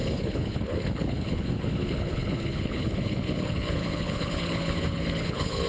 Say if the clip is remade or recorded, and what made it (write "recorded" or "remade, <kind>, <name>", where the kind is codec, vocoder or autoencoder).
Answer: remade, codec, HILCodec